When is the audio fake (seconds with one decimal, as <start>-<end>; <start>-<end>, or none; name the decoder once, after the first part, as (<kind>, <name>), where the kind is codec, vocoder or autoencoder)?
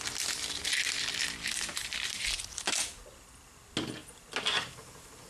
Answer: none